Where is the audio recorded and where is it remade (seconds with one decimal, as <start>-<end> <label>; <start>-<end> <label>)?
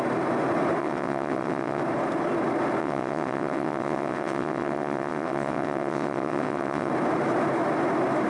0.0-0.8 recorded; 0.8-1.8 remade; 1.8-2.8 recorded; 2.8-6.9 remade; 6.9-8.3 recorded